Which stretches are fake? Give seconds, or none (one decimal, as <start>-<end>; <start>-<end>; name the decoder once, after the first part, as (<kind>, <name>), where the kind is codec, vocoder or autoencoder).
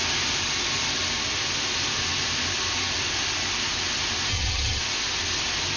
4.3-4.8 (vocoder, HiFi-GAN)